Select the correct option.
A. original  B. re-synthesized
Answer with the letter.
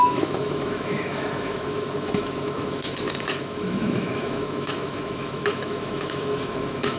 B